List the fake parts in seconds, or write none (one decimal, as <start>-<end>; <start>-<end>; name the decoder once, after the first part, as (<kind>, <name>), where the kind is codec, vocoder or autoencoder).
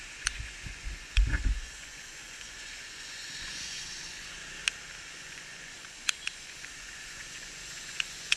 0.0-4.6 (vocoder, Vocos); 5.1-8.4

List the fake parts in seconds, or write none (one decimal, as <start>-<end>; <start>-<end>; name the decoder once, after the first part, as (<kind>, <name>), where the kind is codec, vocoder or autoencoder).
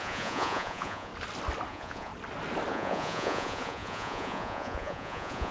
0.0-1.1 (vocoder, Vocos); 1.7-2.1; 2.7-5.5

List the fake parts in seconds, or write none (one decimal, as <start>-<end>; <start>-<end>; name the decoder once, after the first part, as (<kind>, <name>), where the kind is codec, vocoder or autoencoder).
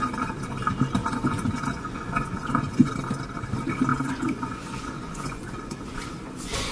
1.0-2.9 (vocoder, Vocos); 3.9-6.7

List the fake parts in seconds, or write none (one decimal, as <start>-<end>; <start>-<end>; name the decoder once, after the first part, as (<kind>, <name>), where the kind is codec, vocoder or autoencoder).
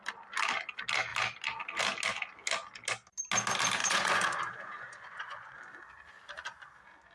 3.8-5.6 (vocoder, Vocos)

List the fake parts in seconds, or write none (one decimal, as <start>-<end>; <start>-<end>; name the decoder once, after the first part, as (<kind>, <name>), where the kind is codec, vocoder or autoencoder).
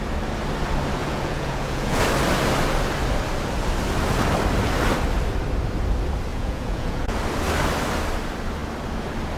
1.0-2.0 (vocoder, Vocos); 6.3-7.2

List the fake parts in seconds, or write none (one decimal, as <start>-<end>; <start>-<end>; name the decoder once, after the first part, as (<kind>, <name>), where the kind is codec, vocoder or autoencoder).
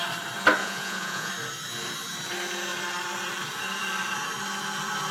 0.6-1.3 (vocoder, Vocos)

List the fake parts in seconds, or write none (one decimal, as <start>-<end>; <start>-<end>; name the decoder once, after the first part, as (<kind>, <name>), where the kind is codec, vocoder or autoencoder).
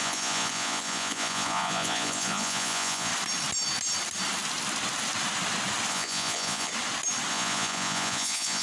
0.0-3.1 (vocoder, Vocos); 5.9-6.7; 7.3-8.6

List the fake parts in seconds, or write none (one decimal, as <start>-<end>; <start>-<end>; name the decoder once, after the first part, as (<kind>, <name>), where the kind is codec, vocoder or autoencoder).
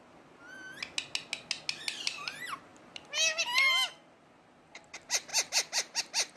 none